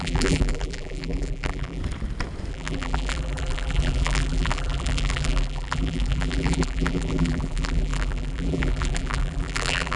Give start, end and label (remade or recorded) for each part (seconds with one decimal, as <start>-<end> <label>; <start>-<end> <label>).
0.0-1.8 remade; 1.8-2.5 recorded; 2.5-10.0 remade

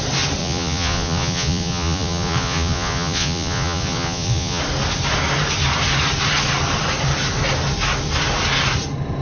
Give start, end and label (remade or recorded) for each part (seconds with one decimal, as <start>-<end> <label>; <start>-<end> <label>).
0.0-0.4 recorded; 0.4-4.6 remade; 4.6-9.2 recorded

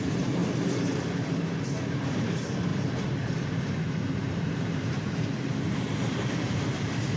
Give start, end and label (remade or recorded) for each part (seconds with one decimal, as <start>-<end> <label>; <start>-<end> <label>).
0.0-0.4 remade; 0.4-2.1 recorded; 2.1-2.7 remade; 2.7-4.3 recorded; 4.3-7.2 remade